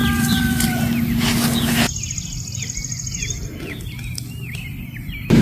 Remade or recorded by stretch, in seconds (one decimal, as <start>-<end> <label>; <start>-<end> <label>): 0.0-0.7 remade; 0.7-5.4 recorded